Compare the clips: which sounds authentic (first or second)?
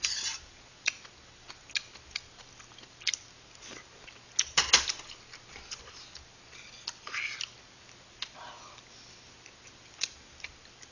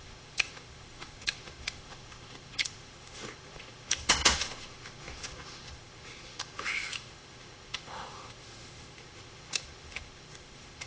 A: first